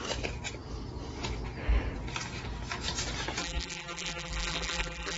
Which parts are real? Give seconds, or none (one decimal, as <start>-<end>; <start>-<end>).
0.0-3.4

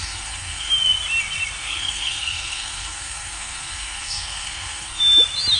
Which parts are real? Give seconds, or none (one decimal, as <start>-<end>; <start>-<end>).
0.7-1.6; 5.0-5.6

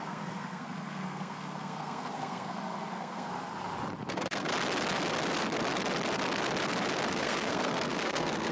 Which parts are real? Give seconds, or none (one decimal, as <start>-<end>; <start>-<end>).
3.5-4.1; 4.5-7.1